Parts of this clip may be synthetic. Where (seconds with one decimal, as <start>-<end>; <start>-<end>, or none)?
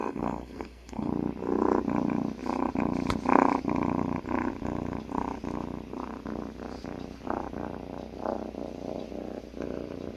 0.0-1.1